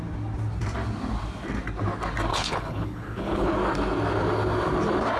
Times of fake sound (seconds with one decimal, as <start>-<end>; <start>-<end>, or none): 2.3-3.5